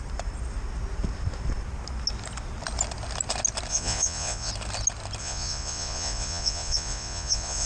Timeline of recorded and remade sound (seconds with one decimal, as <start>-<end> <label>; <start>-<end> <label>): 0.0-3.7 recorded; 3.7-4.5 remade; 4.5-5.2 recorded; 5.2-7.7 remade